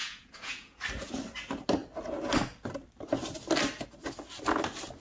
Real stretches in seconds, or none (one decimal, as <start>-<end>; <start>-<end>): 0.8-5.0